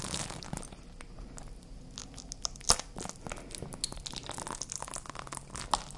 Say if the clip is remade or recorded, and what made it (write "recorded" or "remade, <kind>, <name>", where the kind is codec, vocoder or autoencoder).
recorded